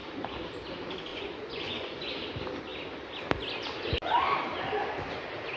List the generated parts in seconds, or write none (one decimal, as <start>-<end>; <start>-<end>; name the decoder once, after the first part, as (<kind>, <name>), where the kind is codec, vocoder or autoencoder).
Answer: 1.1-2.1 (vocoder, Vocos)